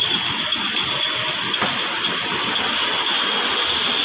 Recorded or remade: recorded